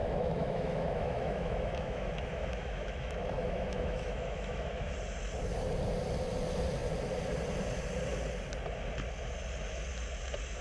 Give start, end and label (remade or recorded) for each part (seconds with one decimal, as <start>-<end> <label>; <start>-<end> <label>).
0.0-4.9 remade; 4.9-10.6 recorded